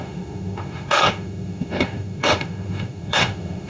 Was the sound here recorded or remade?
remade